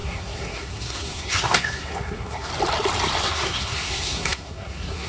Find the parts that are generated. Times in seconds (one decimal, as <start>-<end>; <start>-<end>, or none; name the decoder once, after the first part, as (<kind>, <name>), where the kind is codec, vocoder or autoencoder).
0.0-2.5 (codec, SNAC); 3.2-5.1